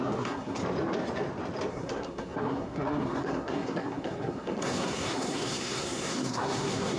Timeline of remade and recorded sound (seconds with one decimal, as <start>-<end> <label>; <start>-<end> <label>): 0.0-0.6 remade; 0.6-1.7 recorded; 1.7-7.0 remade